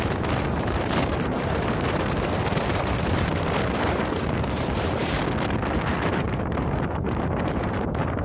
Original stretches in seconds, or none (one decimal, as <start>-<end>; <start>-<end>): 5.0-5.9